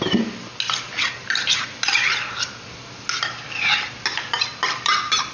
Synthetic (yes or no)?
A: no